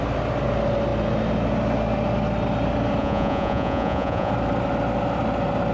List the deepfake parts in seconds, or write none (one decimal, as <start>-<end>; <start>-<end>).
3.0-4.3